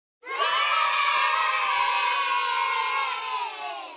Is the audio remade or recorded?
recorded